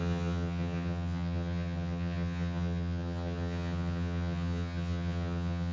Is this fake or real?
fake